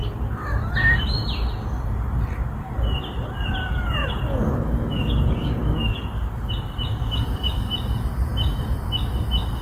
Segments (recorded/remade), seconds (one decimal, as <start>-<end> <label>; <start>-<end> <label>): 0.0-4.0 recorded; 4.0-6.5 remade; 6.5-6.9 recorded; 6.9-7.7 remade; 7.7-9.6 recorded